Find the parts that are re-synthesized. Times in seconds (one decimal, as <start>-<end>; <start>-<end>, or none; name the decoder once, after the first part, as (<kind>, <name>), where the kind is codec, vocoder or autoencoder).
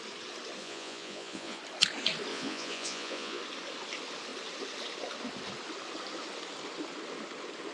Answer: 0.6-1.6 (vocoder, Vocos); 2.3-3.4